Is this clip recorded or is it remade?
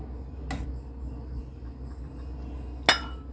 recorded